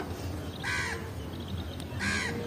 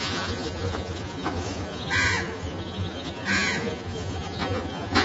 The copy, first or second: second